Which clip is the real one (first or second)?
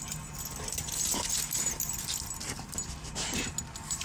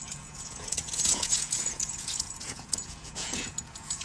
first